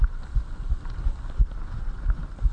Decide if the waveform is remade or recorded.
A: recorded